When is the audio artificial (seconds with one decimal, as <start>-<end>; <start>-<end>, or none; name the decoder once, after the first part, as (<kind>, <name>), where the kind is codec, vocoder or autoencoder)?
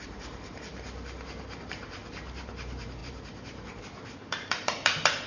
0.0-0.7 (vocoder, BigVGAN v2); 1.6-2.0; 2.5-5.3